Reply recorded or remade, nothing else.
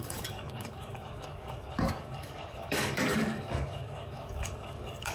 remade